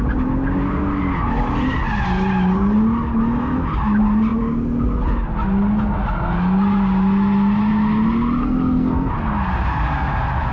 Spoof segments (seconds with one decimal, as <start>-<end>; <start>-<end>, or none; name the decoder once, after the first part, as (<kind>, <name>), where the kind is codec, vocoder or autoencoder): 8.4-9.1 (codec, SNAC)